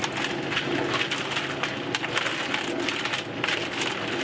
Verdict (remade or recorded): recorded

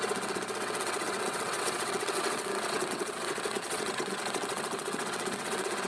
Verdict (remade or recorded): remade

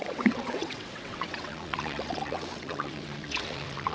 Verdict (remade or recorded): remade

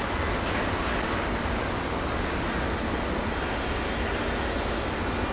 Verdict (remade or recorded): recorded